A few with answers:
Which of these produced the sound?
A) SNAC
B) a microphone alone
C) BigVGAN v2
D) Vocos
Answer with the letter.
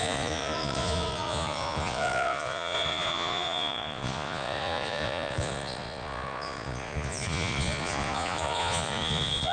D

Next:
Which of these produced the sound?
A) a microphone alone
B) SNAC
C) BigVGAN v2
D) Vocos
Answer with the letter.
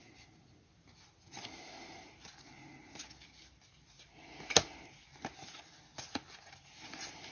A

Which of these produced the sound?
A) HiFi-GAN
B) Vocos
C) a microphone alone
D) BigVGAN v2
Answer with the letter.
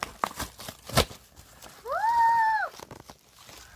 C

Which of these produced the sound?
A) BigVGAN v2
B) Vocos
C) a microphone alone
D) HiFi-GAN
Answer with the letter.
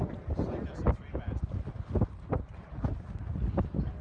C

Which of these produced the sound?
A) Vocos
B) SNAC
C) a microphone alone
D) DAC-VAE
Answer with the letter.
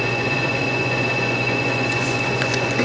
A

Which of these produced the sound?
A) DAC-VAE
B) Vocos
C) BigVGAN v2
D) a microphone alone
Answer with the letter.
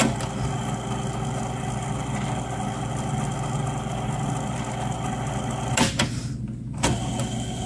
D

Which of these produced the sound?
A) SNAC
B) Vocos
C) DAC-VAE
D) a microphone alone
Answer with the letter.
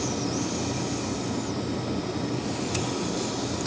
D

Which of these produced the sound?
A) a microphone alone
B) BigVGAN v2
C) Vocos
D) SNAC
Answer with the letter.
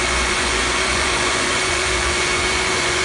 C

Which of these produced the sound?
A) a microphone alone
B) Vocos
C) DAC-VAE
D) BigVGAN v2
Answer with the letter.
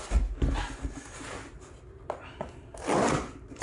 A